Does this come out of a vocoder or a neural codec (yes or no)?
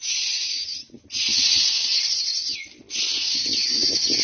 no